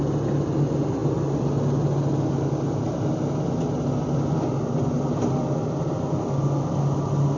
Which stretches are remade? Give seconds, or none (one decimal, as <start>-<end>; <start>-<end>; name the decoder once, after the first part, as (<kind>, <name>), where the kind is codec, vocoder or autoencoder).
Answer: none